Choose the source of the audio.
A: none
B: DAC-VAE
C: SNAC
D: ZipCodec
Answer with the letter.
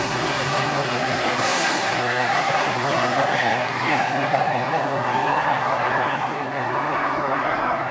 C